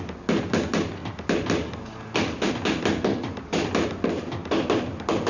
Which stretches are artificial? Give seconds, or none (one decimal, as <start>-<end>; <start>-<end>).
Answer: none

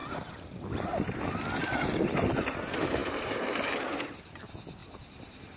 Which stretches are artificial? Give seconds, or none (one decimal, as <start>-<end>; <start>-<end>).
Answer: 0.0-0.8; 3.0-3.7

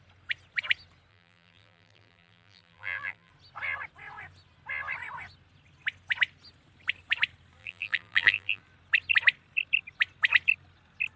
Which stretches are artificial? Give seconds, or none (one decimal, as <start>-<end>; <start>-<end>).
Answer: 1.1-3.3; 7.6-8.6

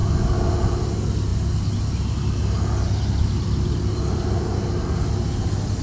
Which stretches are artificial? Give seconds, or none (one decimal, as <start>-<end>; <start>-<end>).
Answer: none

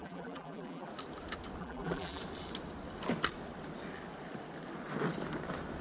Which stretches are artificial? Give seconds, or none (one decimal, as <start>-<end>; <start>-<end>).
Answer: 0.0-0.9; 1.6-2.2

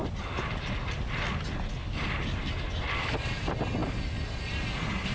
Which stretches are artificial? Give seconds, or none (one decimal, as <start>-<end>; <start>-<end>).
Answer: none

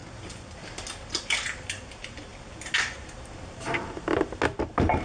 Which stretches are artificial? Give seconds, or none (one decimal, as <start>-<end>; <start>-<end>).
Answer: none